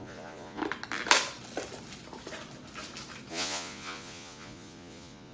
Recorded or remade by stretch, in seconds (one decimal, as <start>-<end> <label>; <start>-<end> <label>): 0.0-0.6 remade; 0.6-3.3 recorded; 3.3-5.3 remade